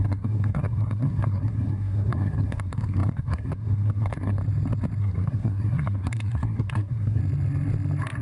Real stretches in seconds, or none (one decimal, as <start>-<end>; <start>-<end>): 4.4-5.0; 7.2-8.2